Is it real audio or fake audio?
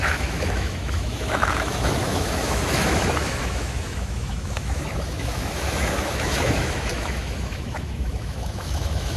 fake